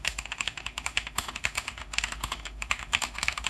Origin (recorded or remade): remade